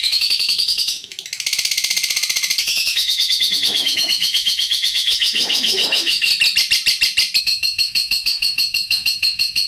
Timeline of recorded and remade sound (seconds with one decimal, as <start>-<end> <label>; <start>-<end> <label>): 0.0-1.1 remade; 1.1-2.6 recorded; 2.6-6.3 remade; 6.3-7.4 recorded; 7.4-9.7 remade